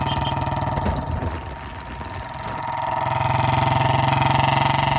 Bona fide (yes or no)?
yes